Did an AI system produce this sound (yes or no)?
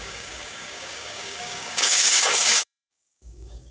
yes